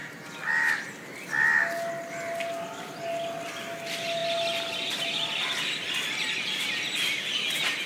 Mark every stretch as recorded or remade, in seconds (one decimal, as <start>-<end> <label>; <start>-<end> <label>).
0.0-7.9 recorded